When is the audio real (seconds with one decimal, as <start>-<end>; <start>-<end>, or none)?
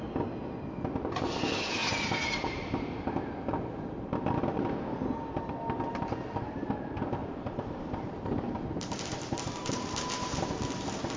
0.0-7.2; 10.5-11.2